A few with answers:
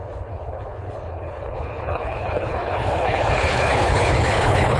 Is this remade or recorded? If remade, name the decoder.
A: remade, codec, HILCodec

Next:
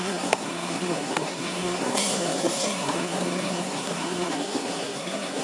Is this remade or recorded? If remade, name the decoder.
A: remade, codec, SNAC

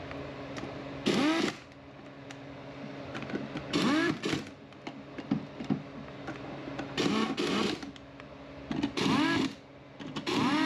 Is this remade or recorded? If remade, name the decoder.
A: recorded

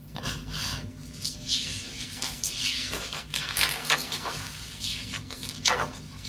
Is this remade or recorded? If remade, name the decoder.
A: remade, codec, SNAC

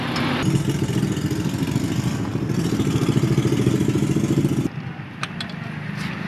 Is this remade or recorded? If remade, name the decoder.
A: recorded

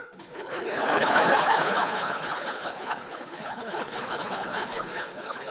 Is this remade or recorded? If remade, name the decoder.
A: remade, codec, HILCodec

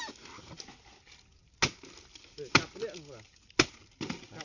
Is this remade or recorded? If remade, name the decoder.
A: recorded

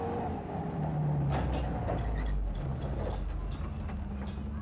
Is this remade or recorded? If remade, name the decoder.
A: recorded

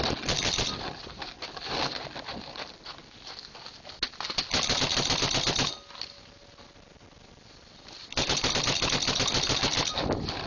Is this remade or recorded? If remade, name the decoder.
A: recorded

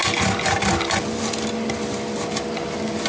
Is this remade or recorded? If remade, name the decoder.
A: recorded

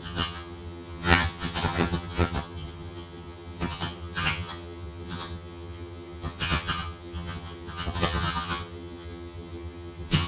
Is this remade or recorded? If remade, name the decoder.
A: remade, vocoder, HiFi-GAN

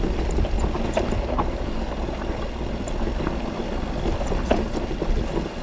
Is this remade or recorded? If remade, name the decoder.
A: recorded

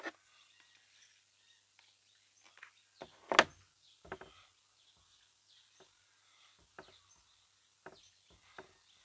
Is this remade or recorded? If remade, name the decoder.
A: recorded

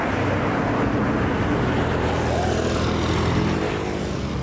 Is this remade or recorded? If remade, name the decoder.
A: recorded